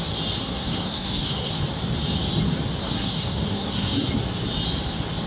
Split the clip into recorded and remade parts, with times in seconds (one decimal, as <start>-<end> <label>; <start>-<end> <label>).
0.0-0.4 recorded; 0.4-1.5 remade; 1.5-2.8 recorded; 2.8-4.1 remade; 4.1-5.3 recorded